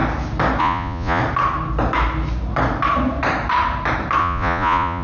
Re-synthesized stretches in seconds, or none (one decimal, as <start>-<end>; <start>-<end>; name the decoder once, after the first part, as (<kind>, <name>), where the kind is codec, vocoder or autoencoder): 0.6-1.2 (vocoder, Vocos); 4.2-5.0